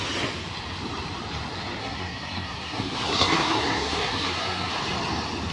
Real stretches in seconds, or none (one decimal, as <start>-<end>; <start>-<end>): 0.0-1.8; 4.7-5.5